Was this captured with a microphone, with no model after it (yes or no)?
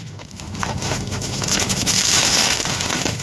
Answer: no